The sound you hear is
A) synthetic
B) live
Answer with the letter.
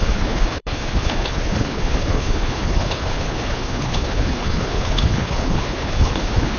A